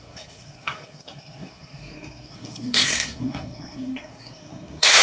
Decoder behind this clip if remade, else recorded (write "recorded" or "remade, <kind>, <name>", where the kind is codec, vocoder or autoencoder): remade, codec, SNAC